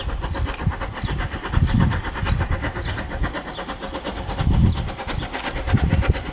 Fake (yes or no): no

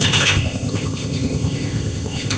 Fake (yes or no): yes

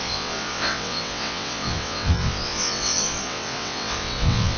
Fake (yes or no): yes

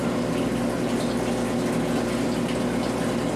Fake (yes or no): no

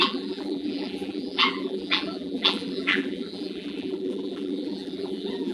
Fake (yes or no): yes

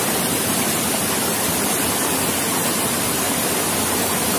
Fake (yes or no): no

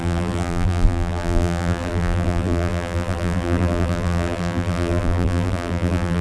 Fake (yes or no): yes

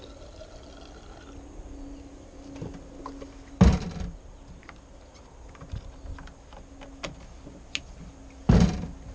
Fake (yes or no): no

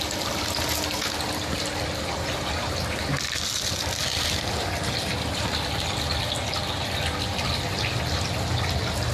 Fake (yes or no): no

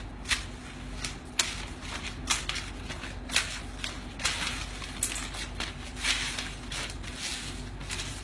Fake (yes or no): no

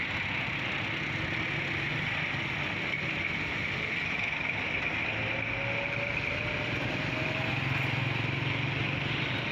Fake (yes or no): no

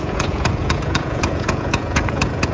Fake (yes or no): yes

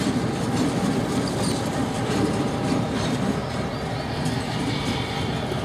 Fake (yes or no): no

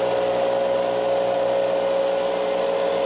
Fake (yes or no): no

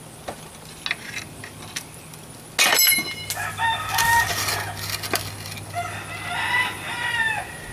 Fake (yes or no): no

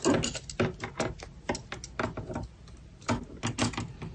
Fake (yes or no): no